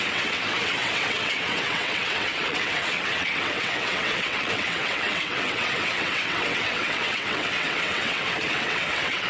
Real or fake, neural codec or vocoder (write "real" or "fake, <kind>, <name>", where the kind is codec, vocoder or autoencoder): fake, vocoder, WaveNeXt